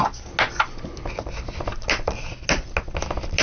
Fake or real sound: real